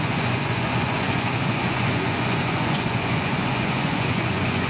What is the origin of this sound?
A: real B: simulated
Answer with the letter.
B